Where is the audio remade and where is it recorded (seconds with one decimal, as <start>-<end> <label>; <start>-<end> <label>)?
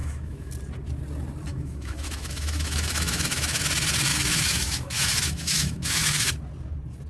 0.0-0.5 remade; 0.5-1.5 recorded; 1.5-3.6 remade; 3.6-4.1 recorded; 4.1-6.3 remade; 6.3-7.1 recorded